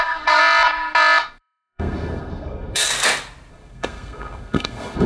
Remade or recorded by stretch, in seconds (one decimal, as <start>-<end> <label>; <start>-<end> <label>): 0.0-0.4 remade; 0.4-1.4 recorded; 1.4-2.9 remade; 2.9-3.5 recorded; 3.5-5.1 remade